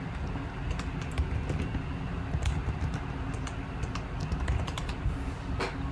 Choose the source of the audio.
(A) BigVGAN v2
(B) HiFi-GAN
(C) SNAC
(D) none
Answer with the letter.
D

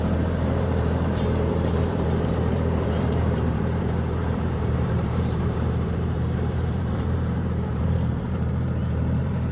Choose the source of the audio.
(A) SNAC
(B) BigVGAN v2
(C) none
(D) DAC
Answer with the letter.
B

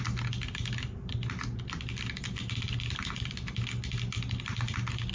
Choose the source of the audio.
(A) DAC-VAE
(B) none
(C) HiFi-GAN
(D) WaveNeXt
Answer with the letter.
B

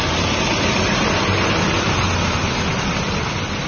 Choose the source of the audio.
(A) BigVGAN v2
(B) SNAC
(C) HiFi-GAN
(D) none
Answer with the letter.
D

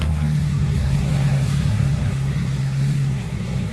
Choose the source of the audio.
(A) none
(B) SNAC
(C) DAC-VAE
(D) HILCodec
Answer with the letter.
B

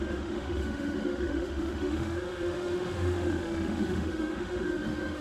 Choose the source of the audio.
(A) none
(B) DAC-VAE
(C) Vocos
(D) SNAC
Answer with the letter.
B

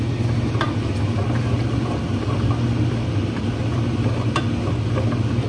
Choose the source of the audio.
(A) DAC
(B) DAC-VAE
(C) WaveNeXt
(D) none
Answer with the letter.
D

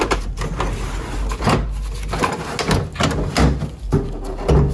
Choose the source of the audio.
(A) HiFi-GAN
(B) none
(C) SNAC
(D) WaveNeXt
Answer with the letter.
B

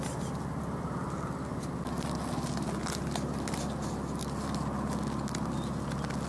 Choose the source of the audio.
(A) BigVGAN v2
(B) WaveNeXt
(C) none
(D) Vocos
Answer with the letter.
C